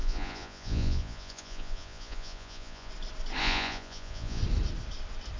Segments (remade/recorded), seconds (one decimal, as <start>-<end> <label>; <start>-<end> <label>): 0.0-2.9 remade; 2.9-3.4 recorded; 3.4-4.4 remade; 4.4-5.4 recorded